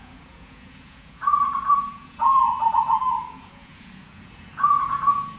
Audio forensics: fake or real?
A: fake